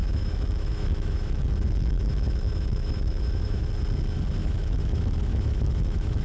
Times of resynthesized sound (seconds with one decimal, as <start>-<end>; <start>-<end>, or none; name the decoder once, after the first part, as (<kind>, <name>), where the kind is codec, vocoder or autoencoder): 0.0-3.7 (autoencoder, DAC-VAE); 4.4-6.2